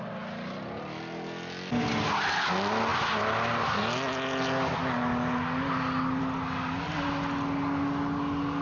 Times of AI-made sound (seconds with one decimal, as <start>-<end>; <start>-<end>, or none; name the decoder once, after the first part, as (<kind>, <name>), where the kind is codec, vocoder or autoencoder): none